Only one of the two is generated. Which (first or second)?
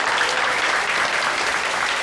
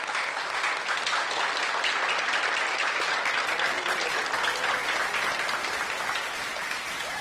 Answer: first